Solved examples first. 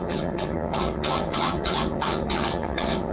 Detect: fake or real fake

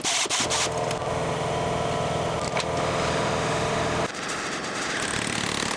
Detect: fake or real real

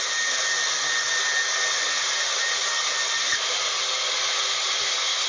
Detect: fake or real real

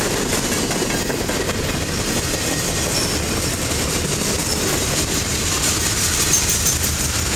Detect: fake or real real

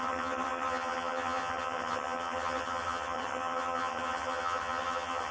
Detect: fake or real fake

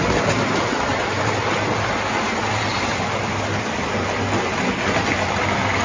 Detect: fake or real real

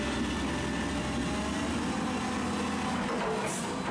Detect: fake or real real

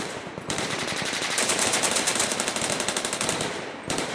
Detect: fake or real fake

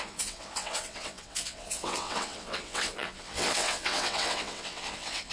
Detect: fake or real fake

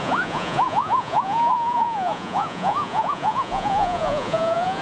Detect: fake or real fake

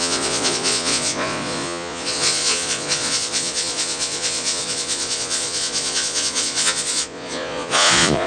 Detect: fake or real fake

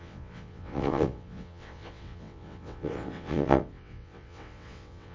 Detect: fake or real fake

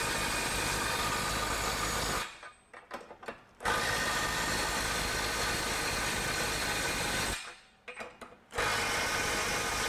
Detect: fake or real real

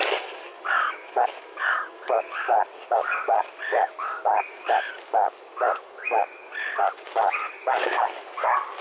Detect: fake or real fake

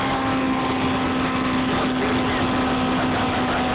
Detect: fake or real real